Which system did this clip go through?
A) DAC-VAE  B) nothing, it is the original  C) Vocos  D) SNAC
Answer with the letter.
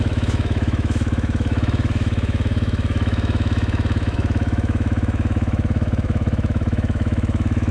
A